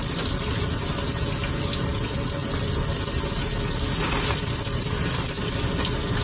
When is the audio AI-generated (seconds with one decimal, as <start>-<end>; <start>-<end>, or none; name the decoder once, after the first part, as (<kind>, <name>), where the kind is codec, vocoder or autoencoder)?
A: none